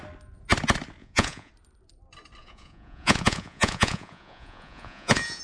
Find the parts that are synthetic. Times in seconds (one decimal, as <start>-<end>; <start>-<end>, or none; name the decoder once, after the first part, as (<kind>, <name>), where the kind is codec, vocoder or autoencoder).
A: 1.0-1.5 (vocoder, Vocos); 2.4-5.4